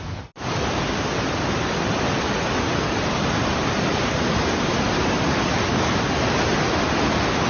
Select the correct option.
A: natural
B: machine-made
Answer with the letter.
A